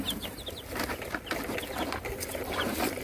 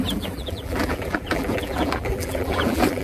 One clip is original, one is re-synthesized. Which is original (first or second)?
first